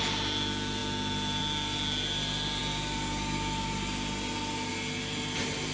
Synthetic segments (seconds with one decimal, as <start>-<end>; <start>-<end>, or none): none